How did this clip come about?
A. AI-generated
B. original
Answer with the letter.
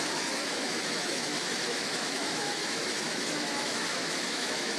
A